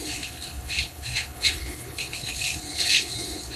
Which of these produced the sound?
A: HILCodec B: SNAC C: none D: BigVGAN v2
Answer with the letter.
A